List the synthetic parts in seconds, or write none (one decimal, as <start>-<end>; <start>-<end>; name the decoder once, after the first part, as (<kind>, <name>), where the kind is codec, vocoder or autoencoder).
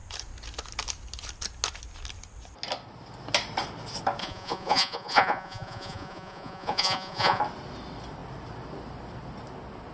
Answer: 4.2-7.4 (vocoder, Vocos)